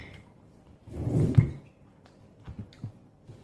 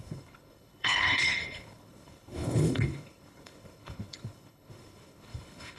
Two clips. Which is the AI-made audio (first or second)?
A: second